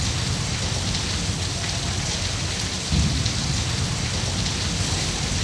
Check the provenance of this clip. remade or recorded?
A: recorded